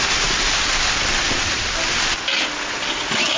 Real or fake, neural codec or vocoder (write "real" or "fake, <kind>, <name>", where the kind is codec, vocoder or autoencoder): real